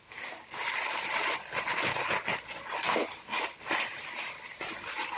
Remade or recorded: recorded